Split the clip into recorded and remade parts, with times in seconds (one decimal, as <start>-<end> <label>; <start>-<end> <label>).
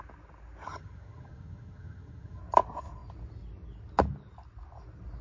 0.0-0.7 recorded; 0.7-2.4 remade; 2.4-5.2 recorded